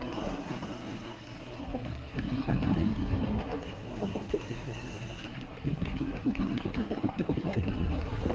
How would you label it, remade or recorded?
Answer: remade